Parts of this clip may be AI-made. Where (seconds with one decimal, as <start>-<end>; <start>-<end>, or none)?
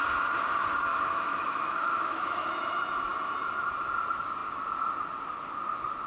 0.9-2.5